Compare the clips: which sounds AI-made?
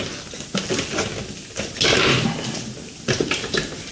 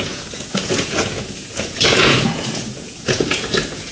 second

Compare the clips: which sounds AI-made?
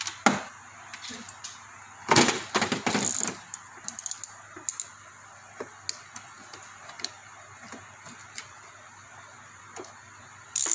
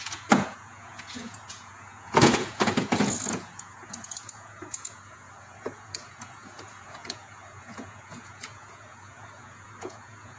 second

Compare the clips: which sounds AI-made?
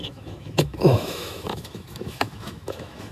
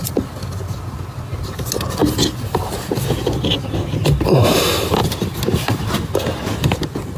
first